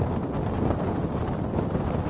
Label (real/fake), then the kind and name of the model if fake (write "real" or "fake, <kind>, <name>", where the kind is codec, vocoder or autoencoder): real